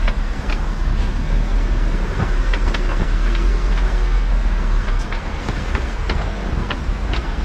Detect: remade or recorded remade